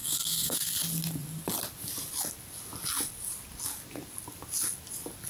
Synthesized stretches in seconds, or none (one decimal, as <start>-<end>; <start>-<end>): 0.0-0.7